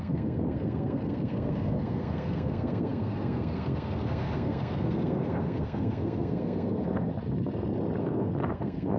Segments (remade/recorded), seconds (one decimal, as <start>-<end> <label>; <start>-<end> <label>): 0.0-7.1 remade; 7.1-8.0 recorded; 8.0-9.0 remade